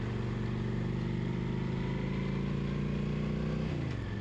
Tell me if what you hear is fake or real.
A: real